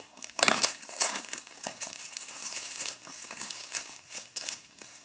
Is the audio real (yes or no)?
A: no